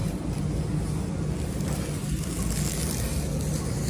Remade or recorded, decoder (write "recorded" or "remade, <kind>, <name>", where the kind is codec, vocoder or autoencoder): recorded